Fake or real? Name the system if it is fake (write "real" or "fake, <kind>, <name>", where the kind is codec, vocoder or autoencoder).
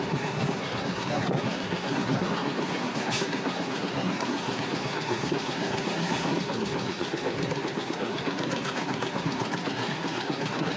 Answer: fake, codec, SNAC